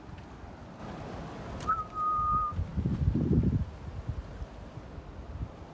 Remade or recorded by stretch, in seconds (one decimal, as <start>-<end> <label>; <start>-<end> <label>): 0.0-5.7 recorded